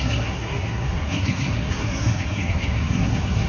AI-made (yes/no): yes